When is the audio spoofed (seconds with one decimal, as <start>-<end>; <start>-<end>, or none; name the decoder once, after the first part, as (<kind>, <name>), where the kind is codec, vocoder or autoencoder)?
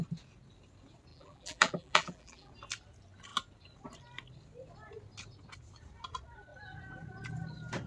1.1-2.5 (vocoder, BigVGAN v2)